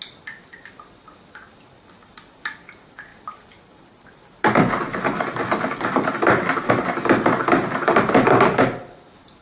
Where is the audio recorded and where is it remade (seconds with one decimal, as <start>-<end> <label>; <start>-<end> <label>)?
0.0-9.4 recorded